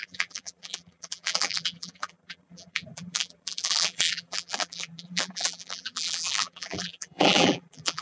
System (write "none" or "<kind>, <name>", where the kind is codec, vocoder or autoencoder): vocoder, BigVGAN v2